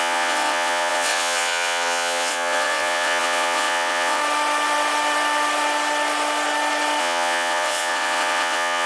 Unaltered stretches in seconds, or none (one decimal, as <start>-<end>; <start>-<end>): 4.2-7.0